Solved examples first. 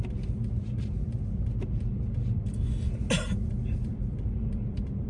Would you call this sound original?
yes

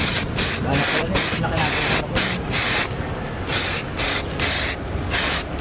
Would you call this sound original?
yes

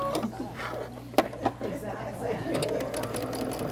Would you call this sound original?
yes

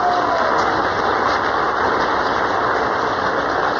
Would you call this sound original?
yes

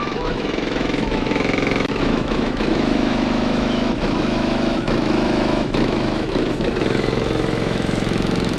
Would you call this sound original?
no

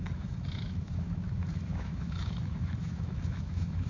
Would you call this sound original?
no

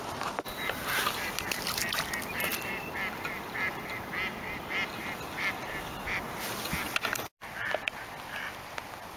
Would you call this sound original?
yes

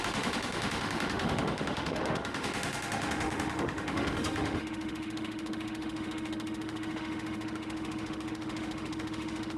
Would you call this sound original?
no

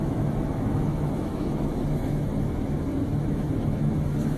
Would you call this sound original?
no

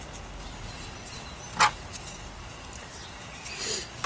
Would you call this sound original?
yes